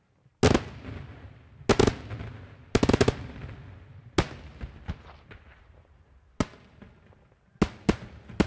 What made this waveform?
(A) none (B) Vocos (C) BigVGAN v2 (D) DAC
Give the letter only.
A